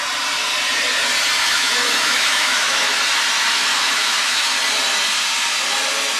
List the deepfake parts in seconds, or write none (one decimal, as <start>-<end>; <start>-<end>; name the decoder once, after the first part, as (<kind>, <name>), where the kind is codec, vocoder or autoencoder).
1.4-3.0 (autoencoder, DAC-VAE); 3.7-4.5